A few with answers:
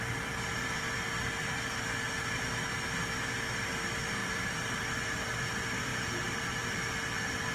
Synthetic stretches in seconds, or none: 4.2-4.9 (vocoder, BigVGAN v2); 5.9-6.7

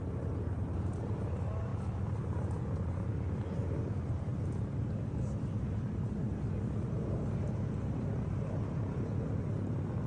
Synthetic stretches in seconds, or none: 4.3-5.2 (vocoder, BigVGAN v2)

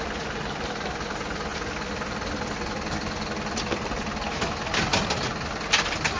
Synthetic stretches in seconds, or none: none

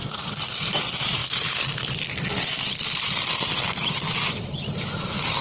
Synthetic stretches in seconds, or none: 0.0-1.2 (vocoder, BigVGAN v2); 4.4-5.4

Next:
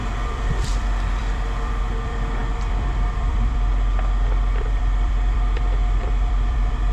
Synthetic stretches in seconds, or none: 0.0-6.9 (vocoder, BigVGAN v2)